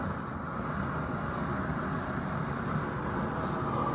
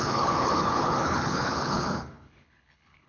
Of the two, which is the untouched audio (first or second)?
first